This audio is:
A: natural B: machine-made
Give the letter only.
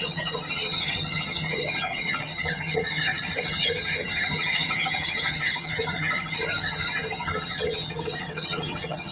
B